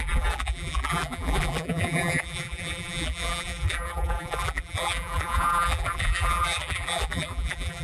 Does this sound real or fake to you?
fake